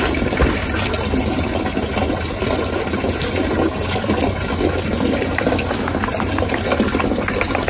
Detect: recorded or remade recorded